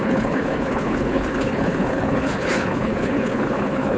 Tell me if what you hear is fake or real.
fake